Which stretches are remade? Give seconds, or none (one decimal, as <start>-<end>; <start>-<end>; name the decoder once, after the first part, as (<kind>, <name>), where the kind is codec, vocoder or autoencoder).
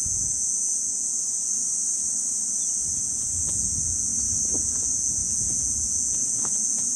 0.0-1.6 (vocoder, Vocos); 3.0-4.1; 4.6-7.0